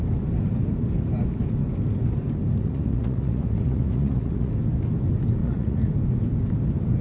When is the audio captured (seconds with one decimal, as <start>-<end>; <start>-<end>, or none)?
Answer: 0.0-2.6; 4.5-5.4; 5.9-7.0